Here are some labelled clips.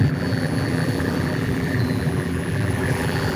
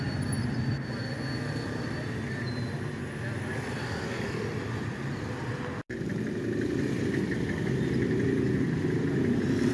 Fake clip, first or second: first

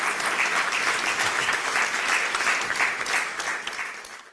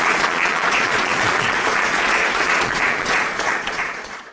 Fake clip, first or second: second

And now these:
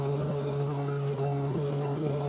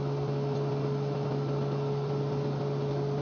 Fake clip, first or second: first